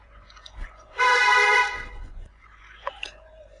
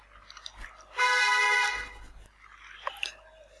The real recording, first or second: second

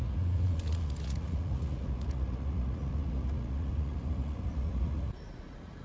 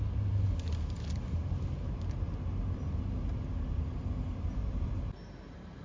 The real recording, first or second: second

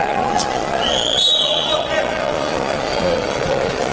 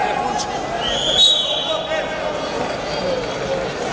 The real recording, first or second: second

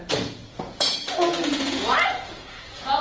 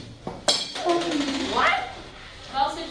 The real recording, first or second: second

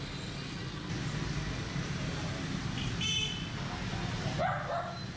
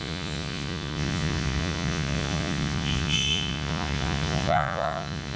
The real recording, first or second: first